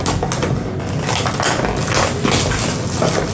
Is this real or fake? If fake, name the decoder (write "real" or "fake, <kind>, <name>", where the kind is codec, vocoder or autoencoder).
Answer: real